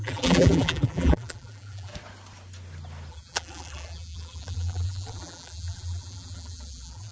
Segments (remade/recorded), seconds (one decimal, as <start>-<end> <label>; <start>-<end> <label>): 0.0-1.9 remade; 1.9-3.1 recorded; 3.1-7.1 remade